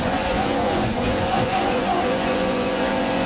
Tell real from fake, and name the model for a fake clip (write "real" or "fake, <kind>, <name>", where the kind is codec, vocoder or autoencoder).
fake, vocoder, Vocos